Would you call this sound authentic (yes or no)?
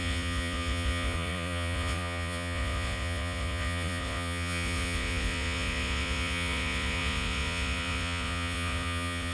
no